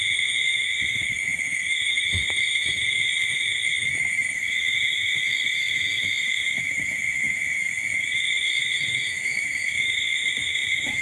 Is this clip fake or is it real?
fake